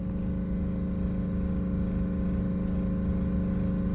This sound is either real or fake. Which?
real